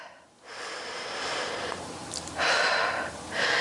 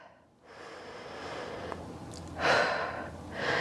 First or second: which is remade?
first